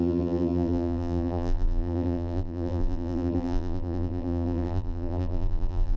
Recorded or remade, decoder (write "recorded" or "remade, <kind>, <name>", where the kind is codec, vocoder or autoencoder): remade, vocoder, BigVGAN v2